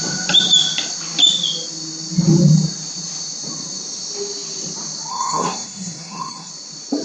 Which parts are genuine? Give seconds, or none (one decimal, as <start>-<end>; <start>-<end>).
0.0-5.1; 6.5-7.0